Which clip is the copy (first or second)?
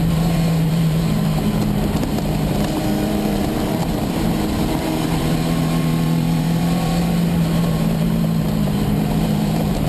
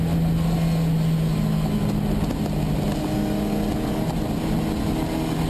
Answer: first